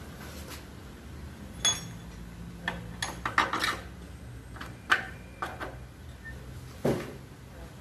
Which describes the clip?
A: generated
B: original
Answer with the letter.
B